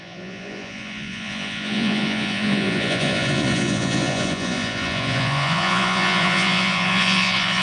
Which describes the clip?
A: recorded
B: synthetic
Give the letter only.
B